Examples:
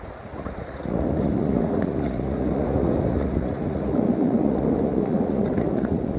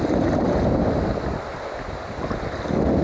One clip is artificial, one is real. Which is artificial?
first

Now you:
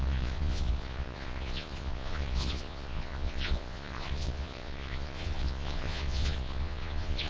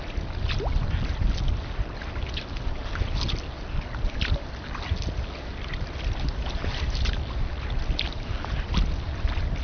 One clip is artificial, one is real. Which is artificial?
first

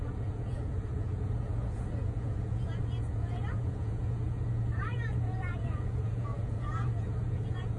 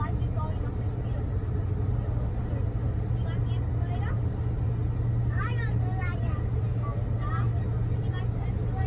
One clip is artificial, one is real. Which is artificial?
first